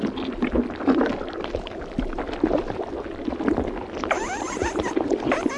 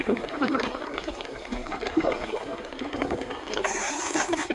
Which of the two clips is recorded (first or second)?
first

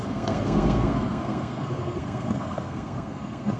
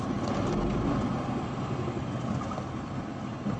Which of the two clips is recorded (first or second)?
second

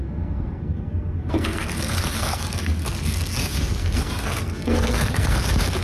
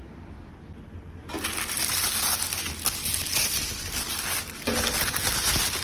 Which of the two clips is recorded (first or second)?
second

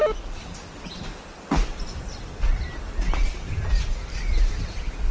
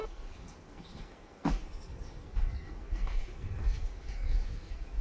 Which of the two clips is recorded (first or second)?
first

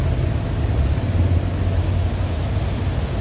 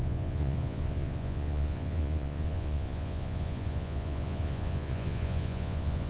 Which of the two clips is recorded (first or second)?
first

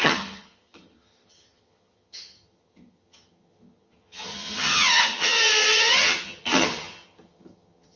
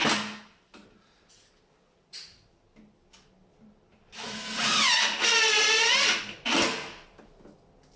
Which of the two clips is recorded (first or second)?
second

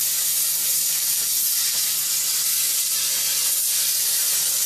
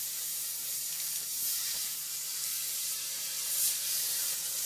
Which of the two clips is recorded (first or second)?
first